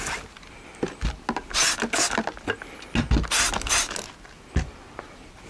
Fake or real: real